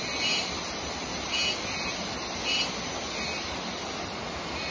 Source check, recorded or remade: recorded